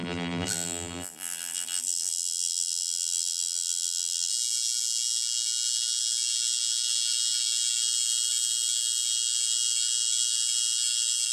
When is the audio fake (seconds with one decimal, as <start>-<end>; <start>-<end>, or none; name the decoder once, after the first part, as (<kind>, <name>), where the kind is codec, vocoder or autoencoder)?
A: 0.0-4.3 (vocoder, BigVGAN v2)